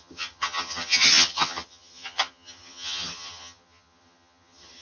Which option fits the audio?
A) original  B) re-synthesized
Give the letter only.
B